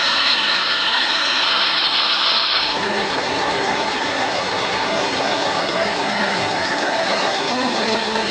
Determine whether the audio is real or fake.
fake